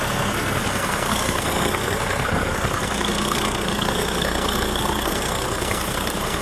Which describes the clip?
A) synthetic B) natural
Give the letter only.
A